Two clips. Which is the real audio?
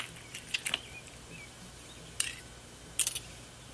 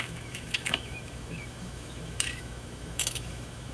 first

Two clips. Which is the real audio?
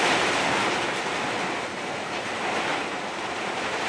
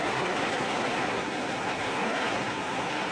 first